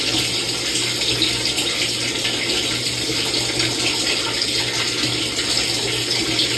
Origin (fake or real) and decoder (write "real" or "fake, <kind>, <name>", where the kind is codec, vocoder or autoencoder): real